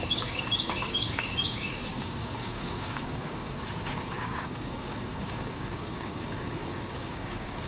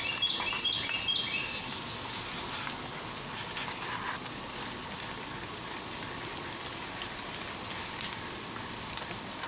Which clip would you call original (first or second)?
second